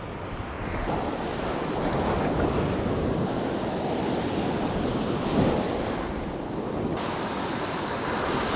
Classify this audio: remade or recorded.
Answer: recorded